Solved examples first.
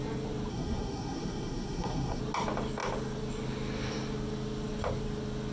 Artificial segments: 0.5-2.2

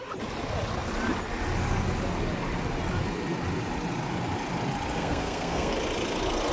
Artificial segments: 4.9-5.7

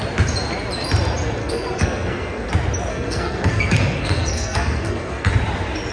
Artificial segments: 1.4-2.5; 2.9-5.3